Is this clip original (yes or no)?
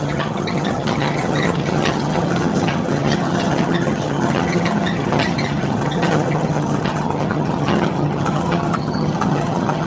no